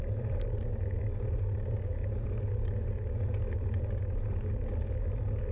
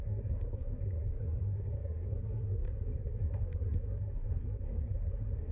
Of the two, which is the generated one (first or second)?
second